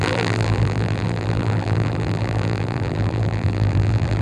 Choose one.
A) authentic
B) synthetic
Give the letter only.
B